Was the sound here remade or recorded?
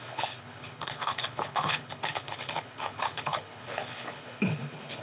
remade